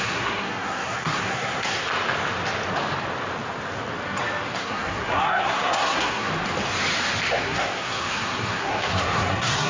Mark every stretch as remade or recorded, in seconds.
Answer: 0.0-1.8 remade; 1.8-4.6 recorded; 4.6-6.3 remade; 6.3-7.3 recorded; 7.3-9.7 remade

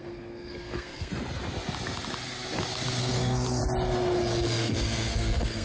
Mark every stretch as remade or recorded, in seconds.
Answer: 0.0-1.1 remade; 1.1-3.0 recorded; 3.0-3.6 remade; 3.6-4.6 recorded; 4.6-5.6 remade

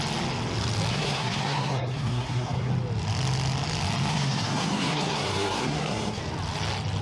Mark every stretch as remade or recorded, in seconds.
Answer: 0.0-0.9 recorded; 0.9-2.7 remade; 2.7-4.1 recorded; 4.1-6.2 remade; 6.2-7.0 recorded

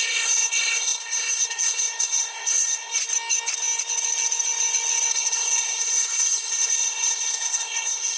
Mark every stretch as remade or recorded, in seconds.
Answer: 0.0-2.9 remade; 2.9-5.1 recorded; 5.1-8.2 remade

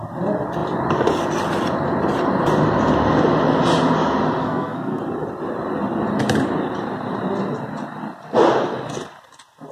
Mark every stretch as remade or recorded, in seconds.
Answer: 0.0-4.4 recorded; 4.4-5.0 remade; 5.0-9.7 recorded